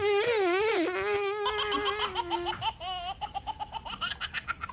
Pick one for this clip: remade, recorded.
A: recorded